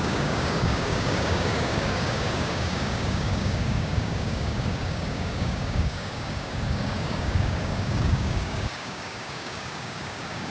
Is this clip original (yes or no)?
no